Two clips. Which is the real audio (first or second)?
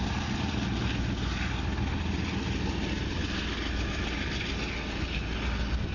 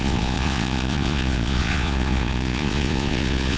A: first